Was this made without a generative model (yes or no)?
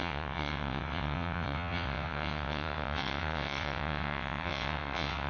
no